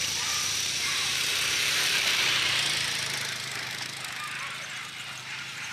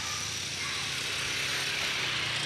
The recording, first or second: second